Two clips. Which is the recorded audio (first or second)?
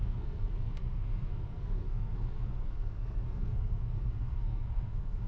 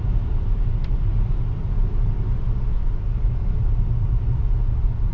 second